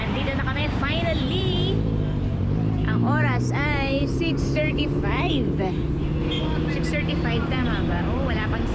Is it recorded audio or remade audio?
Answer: remade